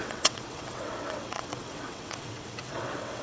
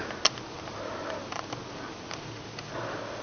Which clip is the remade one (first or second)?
first